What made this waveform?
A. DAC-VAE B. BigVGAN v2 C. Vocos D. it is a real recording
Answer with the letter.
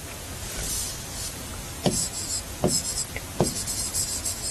D